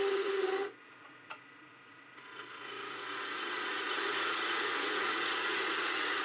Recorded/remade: remade